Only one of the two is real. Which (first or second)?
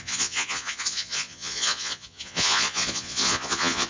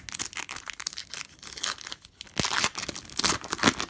second